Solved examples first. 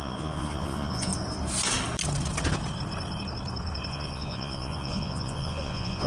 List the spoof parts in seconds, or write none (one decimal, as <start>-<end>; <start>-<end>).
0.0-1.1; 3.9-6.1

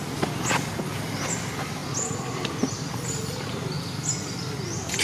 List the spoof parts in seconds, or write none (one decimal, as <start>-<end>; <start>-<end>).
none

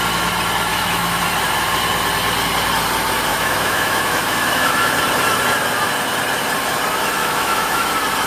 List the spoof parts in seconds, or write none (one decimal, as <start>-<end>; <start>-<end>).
0.7-1.2; 3.3-4.9; 7.2-7.9

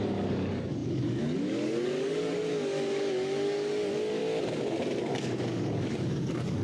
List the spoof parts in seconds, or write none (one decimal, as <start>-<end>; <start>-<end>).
0.0-4.2; 5.0-6.6